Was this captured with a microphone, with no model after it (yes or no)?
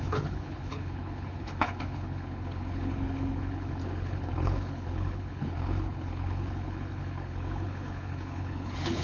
no